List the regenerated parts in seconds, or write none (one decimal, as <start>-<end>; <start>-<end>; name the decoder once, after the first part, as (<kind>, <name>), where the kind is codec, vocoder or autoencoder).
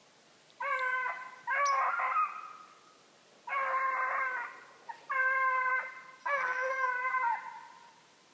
6.2-6.9 (codec, SNAC)